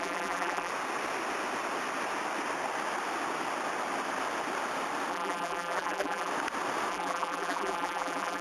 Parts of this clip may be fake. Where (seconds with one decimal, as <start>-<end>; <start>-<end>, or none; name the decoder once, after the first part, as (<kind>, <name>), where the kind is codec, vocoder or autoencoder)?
0.0-0.7 (vocoder, BigVGAN v2); 5.1-6.3; 6.9-8.4